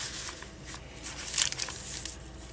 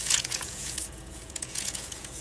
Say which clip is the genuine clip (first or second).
first